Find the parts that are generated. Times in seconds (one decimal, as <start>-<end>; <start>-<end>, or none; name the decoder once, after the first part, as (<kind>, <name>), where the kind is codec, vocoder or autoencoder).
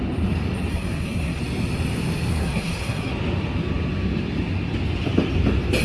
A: 0.7-1.4 (codec, SNAC); 2.3-3.1